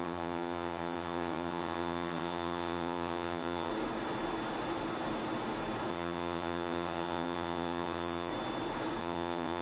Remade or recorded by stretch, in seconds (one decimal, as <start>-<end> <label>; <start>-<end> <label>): 0.0-3.7 remade; 3.7-5.9 recorded; 5.9-8.3 remade; 8.3-9.0 recorded; 9.0-9.6 remade